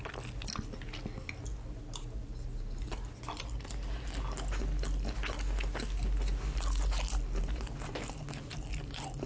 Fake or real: real